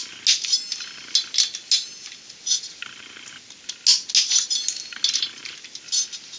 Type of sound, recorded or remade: recorded